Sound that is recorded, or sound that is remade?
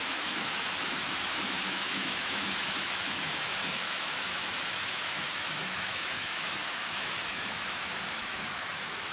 remade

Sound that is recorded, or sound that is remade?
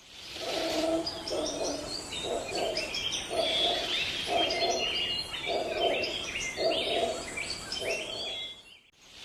recorded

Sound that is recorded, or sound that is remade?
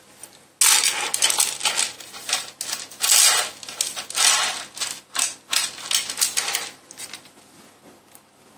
recorded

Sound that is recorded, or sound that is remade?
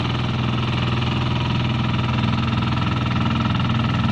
recorded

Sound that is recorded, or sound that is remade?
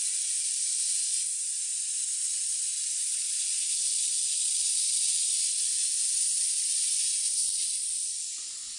recorded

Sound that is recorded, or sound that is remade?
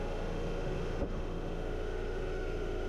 remade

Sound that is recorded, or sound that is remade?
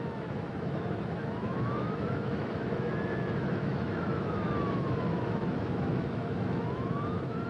remade